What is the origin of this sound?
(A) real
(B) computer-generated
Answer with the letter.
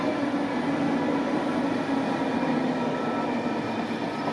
A